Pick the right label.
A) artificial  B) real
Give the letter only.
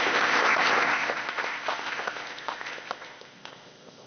A